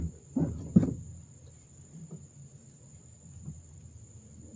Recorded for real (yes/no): no